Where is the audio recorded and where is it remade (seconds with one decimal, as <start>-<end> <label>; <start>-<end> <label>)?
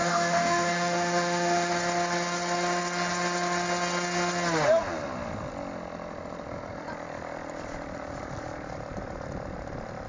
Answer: 0.0-1.7 remade; 1.7-10.1 recorded